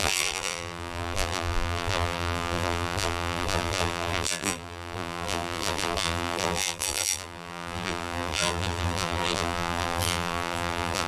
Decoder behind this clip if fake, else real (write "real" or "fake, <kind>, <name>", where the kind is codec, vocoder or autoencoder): fake, vocoder, BigVGAN v2